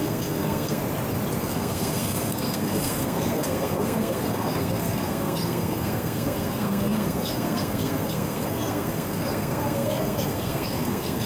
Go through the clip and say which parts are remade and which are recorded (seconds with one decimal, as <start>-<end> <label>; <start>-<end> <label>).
0.0-0.8 remade; 0.8-1.4 recorded; 1.4-11.3 remade